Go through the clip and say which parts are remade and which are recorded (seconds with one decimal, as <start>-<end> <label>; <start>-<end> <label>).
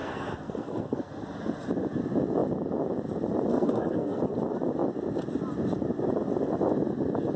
0.0-1.1 remade; 1.1-3.5 recorded; 3.5-4.2 remade; 4.2-7.4 recorded